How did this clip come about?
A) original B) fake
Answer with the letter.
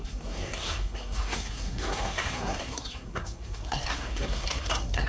B